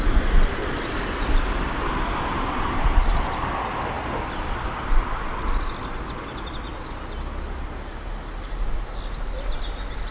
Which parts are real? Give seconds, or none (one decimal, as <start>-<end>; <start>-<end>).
0.0-0.6; 5.4-10.1